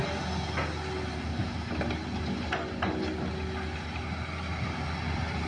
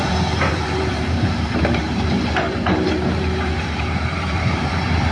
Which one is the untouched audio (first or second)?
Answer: first